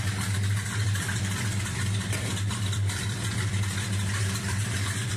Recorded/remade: remade